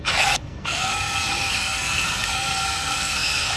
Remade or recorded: remade